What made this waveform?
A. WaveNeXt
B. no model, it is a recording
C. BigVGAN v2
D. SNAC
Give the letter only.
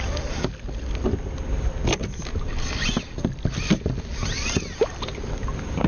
B